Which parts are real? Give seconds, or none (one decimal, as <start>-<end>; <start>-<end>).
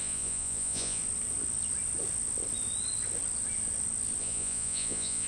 1.0-4.2